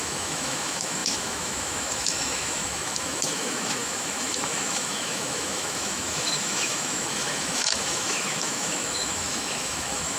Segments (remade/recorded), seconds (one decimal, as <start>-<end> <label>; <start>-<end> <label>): 0.0-10.2 remade

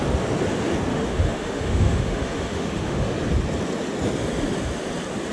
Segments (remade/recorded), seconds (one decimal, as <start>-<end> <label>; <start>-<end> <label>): 0.0-0.9 recorded; 0.9-3.1 remade; 3.1-5.3 recorded

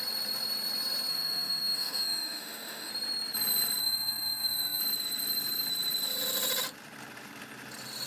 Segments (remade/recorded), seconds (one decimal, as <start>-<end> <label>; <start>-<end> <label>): 0.0-1.1 recorded; 1.1-2.9 remade; 2.9-3.8 recorded; 3.8-4.8 remade; 4.8-8.1 recorded

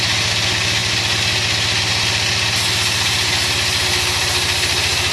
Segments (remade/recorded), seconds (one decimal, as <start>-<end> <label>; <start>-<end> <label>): 0.0-5.1 recorded

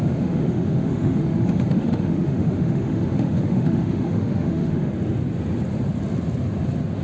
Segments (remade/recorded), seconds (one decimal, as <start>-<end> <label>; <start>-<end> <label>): 0.0-4.9 remade; 4.9-7.0 recorded